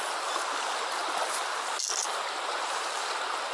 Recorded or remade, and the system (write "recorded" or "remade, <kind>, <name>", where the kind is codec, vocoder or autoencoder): recorded